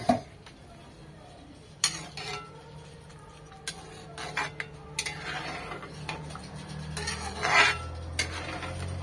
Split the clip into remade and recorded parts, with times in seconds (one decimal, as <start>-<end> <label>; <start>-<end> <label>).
0.0-9.0 recorded